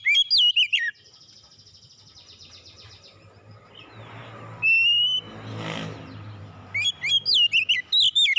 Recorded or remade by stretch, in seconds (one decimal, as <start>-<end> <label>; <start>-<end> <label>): 0.0-8.4 recorded